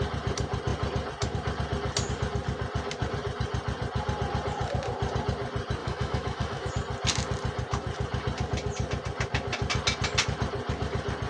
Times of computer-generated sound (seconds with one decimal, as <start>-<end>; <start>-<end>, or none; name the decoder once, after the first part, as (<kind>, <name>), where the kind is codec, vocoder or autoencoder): 5.8-6.7 (autoencoder, DAC-VAE)